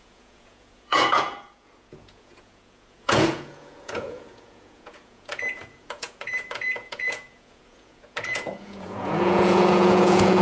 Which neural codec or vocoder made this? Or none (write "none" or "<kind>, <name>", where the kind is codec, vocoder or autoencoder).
vocoder, Vocos